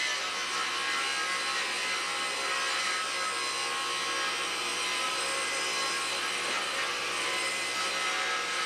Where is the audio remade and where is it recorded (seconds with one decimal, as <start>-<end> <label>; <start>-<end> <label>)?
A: 0.0-4.7 recorded; 4.7-7.5 remade; 7.5-8.7 recorded